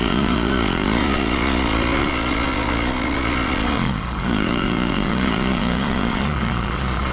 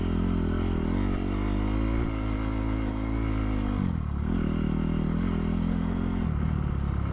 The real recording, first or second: second